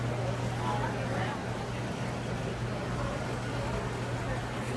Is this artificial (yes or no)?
no